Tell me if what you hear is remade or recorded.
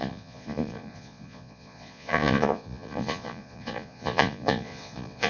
remade